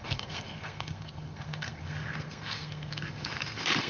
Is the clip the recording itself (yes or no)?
no